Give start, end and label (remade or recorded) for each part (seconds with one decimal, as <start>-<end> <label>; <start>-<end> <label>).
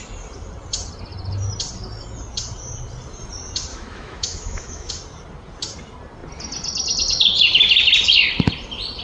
0.0-3.7 recorded; 3.7-4.9 remade; 4.9-9.0 recorded